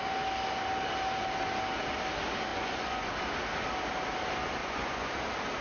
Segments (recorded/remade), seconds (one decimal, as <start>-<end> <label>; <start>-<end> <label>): 0.0-2.5 recorded; 2.5-3.1 remade; 3.1-4.6 recorded; 4.6-5.1 remade; 5.1-5.6 recorded